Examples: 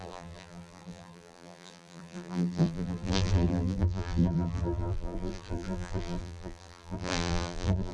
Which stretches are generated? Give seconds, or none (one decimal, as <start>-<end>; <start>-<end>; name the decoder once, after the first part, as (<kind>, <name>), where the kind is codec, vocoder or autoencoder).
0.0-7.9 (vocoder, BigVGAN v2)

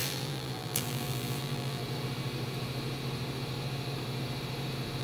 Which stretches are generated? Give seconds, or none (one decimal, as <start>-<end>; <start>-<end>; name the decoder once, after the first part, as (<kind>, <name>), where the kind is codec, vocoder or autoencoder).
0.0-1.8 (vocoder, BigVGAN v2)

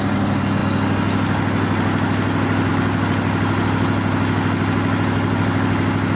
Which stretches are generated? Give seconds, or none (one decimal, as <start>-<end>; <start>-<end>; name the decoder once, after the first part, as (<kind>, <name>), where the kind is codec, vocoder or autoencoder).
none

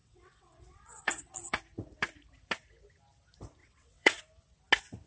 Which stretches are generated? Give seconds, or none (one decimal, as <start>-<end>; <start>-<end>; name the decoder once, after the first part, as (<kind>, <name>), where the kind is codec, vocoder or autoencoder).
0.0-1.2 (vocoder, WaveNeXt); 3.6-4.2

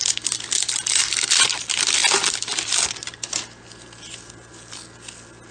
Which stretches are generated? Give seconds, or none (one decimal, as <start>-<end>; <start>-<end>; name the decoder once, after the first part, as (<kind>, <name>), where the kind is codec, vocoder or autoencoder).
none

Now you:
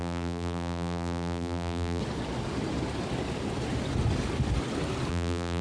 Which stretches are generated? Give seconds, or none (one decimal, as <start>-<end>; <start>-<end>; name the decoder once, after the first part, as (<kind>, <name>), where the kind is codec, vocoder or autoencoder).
0.0-2.0 (vocoder, BigVGAN v2); 5.1-5.6